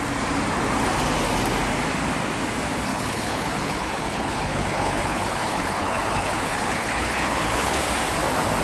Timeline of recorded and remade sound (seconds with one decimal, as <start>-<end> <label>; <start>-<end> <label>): 0.0-2.9 recorded; 2.9-7.8 remade; 7.8-8.6 recorded